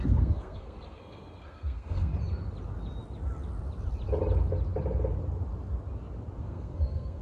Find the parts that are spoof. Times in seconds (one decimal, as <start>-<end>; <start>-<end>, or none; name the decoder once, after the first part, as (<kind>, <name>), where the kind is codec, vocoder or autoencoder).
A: 0.0-2.1 (codec, SNAC); 6.4-7.2